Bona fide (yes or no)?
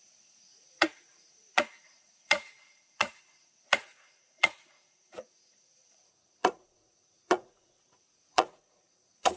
no